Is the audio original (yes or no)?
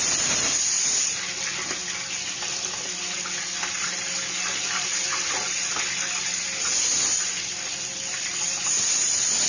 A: yes